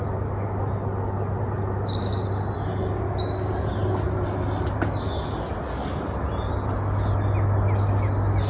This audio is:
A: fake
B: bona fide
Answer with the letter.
B